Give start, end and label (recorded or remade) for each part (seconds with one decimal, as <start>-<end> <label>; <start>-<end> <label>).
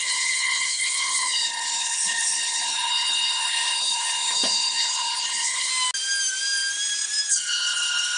0.0-5.7 remade; 5.7-7.3 recorded; 7.3-8.2 remade